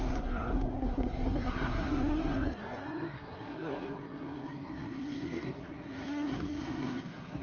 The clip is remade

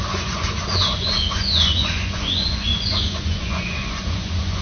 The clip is remade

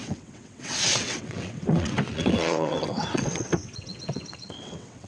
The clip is remade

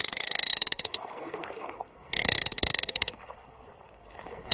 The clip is remade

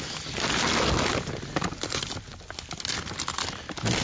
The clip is recorded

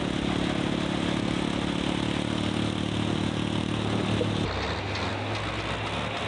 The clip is recorded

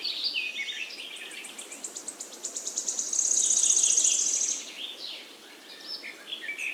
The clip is recorded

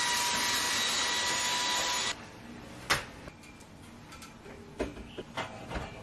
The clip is recorded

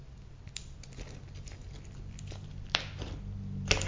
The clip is recorded